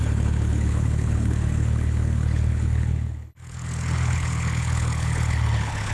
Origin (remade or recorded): remade